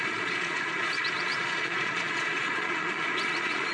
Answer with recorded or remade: remade